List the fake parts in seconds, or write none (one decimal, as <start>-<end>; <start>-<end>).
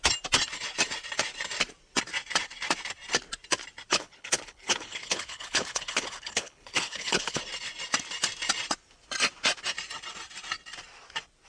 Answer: 3.9-7.4